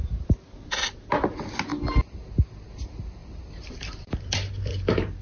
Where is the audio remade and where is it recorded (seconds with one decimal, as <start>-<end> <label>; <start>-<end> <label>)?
0.0-3.2 recorded; 3.2-5.2 remade